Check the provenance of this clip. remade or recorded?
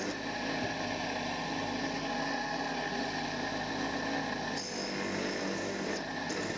recorded